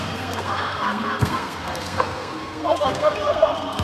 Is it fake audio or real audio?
fake